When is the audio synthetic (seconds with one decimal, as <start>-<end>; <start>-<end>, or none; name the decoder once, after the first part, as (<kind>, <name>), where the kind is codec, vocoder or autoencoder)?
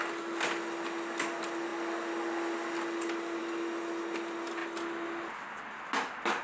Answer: none